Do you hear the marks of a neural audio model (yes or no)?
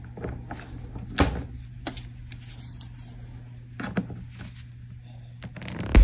no